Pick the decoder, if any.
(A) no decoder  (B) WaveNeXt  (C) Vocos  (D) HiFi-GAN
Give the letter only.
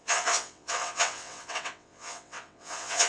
B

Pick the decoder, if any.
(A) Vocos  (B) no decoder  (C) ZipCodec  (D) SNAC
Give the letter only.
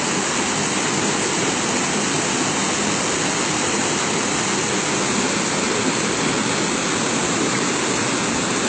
B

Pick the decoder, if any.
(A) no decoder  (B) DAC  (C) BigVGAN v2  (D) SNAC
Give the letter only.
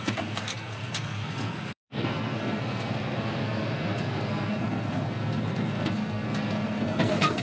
D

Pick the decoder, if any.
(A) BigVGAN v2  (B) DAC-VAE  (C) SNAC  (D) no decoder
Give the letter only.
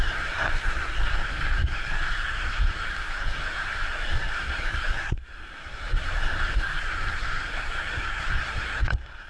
C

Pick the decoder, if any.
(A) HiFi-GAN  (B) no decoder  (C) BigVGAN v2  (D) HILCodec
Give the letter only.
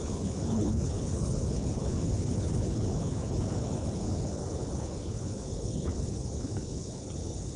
D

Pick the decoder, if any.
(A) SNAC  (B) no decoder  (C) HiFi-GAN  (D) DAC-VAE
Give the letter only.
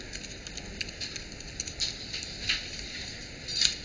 B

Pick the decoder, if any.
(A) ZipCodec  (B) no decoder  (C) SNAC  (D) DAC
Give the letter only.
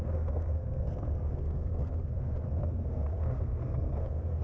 C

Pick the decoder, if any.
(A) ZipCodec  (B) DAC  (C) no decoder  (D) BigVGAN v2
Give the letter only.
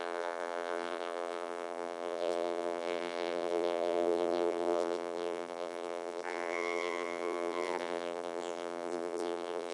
D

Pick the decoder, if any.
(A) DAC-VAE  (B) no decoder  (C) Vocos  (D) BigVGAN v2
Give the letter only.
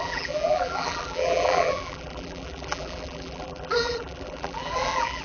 D